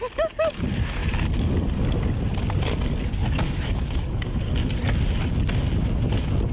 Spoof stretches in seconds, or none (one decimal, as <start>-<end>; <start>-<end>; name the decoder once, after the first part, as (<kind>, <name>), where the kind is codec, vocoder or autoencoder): none

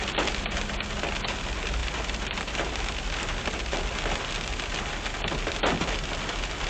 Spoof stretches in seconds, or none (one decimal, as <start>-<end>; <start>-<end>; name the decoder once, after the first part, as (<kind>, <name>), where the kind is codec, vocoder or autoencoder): none

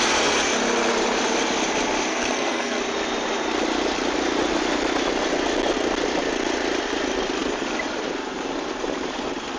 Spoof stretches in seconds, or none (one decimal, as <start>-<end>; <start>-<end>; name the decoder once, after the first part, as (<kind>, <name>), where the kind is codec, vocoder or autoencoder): 2.1-2.8 (codec, SNAC)

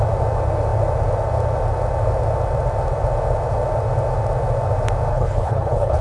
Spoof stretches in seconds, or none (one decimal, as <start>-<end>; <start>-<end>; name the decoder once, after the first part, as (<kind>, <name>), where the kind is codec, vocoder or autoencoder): 5.1-6.0 (codec, HILCodec)

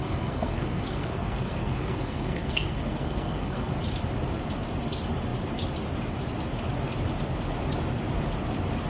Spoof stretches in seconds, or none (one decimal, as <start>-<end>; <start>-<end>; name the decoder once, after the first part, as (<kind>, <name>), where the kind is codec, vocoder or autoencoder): 0.0-3.7 (codec, SNAC)

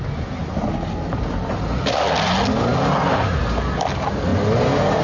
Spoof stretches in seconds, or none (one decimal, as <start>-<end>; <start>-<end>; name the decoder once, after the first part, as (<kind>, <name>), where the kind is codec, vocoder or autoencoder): none

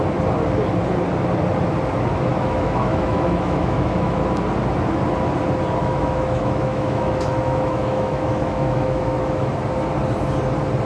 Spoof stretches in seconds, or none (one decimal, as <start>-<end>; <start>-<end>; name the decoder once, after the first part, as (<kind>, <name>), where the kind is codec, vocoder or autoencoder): 2.3-4.3 (autoencoder, DAC-VAE); 5.8-9.5

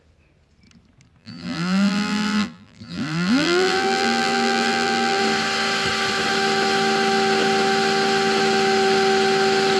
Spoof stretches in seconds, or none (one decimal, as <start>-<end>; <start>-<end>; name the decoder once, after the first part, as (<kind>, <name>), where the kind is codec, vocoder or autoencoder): 1.2-5.2 (vocoder, BigVGAN v2)